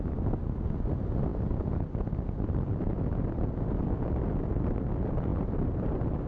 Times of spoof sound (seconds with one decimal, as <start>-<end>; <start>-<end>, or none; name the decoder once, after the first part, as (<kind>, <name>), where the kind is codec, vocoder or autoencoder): 5.3-6.3 (vocoder, BigVGAN v2)